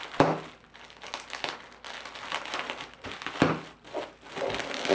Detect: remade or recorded recorded